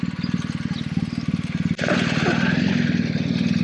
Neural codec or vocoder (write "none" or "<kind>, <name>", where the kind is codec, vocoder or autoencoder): none